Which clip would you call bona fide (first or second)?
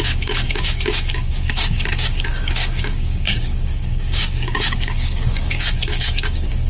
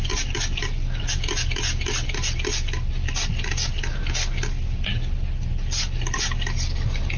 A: second